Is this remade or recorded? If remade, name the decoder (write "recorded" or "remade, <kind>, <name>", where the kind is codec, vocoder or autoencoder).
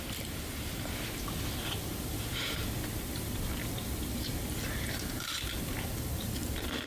recorded